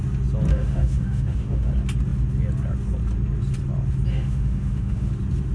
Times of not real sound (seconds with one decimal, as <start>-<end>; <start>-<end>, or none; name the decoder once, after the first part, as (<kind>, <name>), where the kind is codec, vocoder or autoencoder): 0.5-1.7 (autoencoder, DAC-VAE); 4.1-5.1